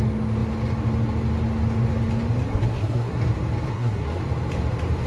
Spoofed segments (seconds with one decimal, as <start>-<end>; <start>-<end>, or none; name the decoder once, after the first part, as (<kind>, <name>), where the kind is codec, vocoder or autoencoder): 2.5-3.2 (codec, SNAC); 3.7-4.2